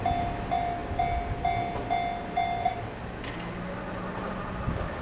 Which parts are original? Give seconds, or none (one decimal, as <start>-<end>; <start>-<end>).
0.0-5.0